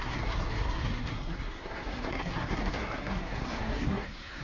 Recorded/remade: remade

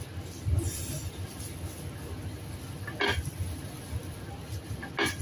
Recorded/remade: recorded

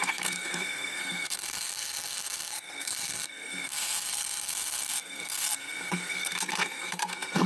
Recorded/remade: remade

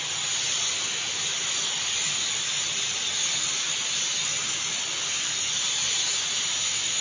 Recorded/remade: recorded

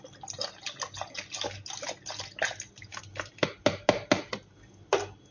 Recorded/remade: recorded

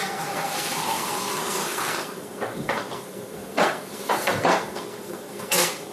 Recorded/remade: remade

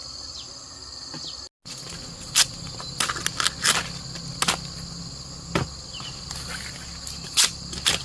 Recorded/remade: recorded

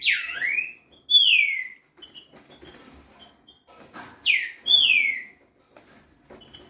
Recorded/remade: recorded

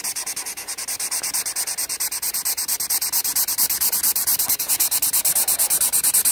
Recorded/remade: recorded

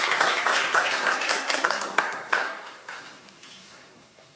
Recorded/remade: remade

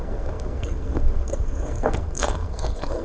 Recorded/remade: remade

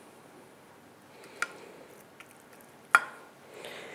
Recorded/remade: recorded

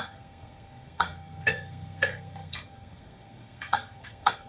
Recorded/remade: remade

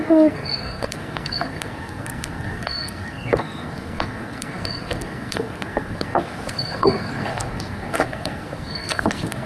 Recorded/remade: remade